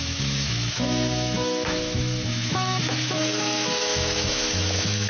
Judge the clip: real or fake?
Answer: fake